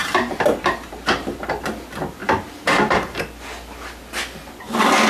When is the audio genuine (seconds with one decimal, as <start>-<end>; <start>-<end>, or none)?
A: 1.4-2.2; 3.2-5.1